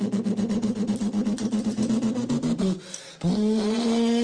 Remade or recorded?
recorded